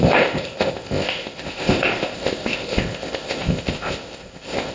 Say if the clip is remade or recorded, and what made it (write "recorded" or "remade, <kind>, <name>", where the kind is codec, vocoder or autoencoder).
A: remade, codec, ZipCodec